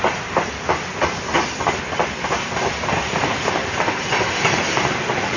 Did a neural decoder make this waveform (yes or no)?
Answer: no